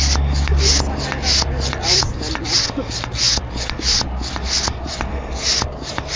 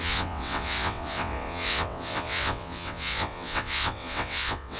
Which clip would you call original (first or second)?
first